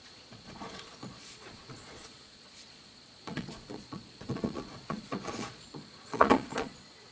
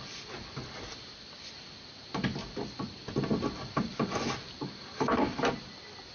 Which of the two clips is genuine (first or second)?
second